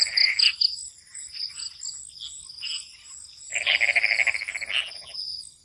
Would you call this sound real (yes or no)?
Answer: yes